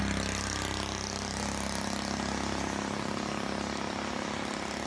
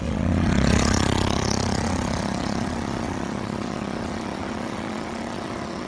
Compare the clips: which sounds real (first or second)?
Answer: first